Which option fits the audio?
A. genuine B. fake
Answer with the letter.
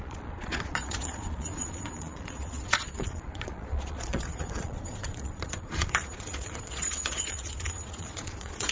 B